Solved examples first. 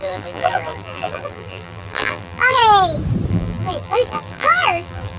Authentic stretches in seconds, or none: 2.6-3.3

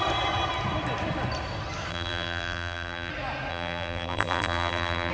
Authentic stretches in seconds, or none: 0.0-1.9; 3.1-3.5

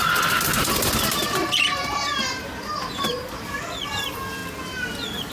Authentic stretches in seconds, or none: 0.0-3.2; 4.4-5.3